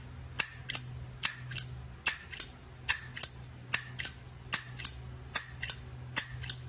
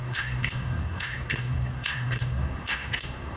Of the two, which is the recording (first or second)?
first